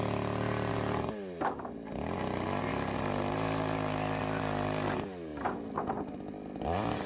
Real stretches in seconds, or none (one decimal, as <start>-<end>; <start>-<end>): 0.0-7.1